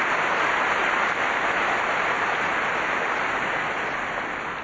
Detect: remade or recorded recorded